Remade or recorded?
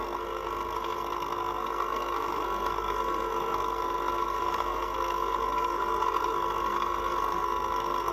remade